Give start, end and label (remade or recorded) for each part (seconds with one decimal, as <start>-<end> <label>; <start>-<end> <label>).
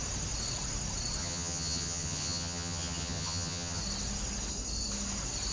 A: 0.0-1.2 recorded; 1.2-3.8 remade; 3.8-5.5 recorded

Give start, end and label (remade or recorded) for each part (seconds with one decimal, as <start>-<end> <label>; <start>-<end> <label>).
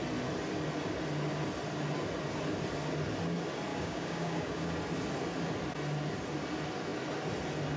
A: 0.0-3.7 recorded; 3.7-4.7 remade; 4.7-7.8 recorded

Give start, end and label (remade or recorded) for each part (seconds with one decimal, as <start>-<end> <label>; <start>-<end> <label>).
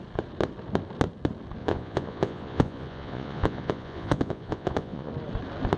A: 0.0-1.6 recorded; 1.6-5.1 remade; 5.1-5.8 recorded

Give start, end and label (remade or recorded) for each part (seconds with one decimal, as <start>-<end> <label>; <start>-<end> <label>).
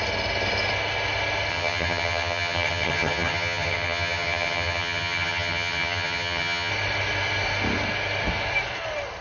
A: 0.0-1.5 recorded; 1.5-6.7 remade; 6.7-9.2 recorded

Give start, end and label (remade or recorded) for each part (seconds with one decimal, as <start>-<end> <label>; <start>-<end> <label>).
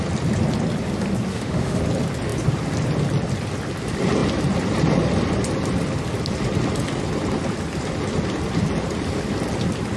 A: 0.0-1.3 recorded; 1.3-1.8 remade; 1.8-10.0 recorded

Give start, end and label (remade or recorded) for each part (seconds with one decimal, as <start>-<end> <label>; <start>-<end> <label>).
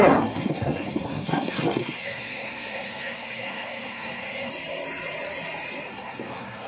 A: 0.0-4.5 remade; 4.5-5.9 recorded; 5.9-6.7 remade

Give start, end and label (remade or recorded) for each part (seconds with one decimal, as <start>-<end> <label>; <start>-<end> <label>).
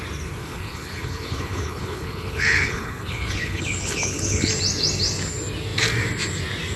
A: 0.0-0.4 recorded; 0.4-4.5 remade; 4.5-6.8 recorded